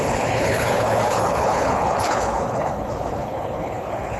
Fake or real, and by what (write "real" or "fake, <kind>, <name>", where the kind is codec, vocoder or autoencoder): fake, codec, HILCodec